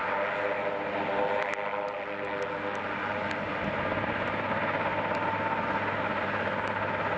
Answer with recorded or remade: recorded